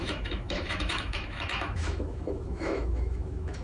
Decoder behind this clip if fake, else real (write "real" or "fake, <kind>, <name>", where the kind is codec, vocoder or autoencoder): fake, autoencoder, DAC-VAE